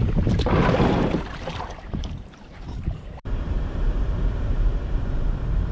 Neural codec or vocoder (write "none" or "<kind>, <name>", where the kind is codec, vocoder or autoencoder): vocoder, BigVGAN v2